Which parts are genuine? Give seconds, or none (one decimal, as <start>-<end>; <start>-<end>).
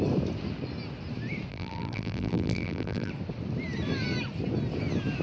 0.0-1.5; 3.1-5.2